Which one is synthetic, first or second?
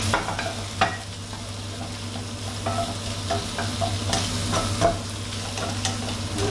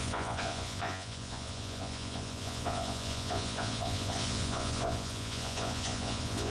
second